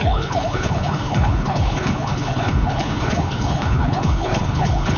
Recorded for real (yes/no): no